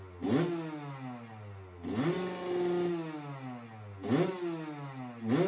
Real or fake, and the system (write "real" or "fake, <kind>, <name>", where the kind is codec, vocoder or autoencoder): real